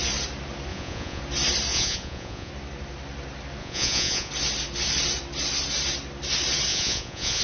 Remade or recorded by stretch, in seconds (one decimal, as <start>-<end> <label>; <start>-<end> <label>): 0.0-0.7 recorded; 0.7-1.2 remade; 1.2-1.7 recorded; 1.7-2.5 remade; 2.5-3.6 recorded; 3.6-4.3 remade; 4.3-6.7 recorded; 6.7-7.4 remade